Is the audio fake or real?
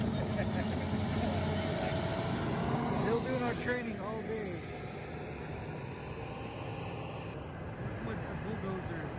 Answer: real